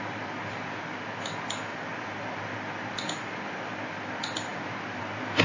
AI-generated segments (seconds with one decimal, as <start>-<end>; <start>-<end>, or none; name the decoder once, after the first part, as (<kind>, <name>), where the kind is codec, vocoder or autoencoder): none